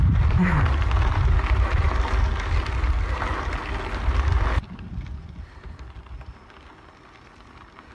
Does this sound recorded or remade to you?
recorded